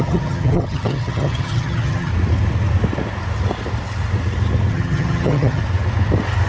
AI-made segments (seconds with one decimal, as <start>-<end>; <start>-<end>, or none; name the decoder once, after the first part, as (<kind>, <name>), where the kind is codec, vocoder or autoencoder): 0.0-2.1 (vocoder, HiFi-GAN); 4.7-5.6